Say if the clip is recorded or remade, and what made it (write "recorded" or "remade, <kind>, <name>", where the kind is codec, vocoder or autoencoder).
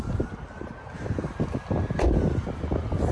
recorded